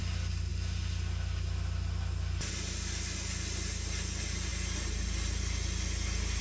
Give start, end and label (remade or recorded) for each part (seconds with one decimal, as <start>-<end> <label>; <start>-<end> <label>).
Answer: 0.0-6.4 recorded